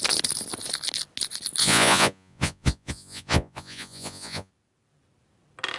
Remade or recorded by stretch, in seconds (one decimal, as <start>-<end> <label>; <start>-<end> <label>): 0.0-1.6 recorded; 1.6-4.5 remade; 4.5-5.8 recorded